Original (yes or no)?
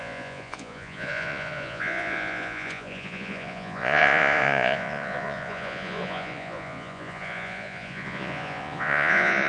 no